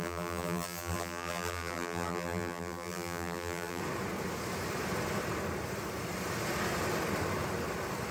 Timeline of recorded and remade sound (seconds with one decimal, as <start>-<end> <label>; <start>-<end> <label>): 0.0-3.8 remade; 3.8-8.1 recorded